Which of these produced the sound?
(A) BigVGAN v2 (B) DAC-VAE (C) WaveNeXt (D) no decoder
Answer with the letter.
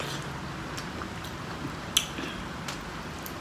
D